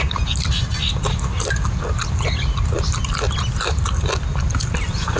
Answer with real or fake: real